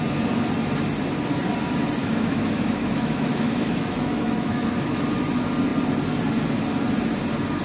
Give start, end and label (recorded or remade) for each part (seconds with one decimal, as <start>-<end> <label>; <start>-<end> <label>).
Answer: 0.0-2.0 recorded; 2.0-5.0 remade; 5.0-7.6 recorded